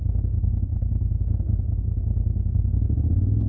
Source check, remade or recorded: remade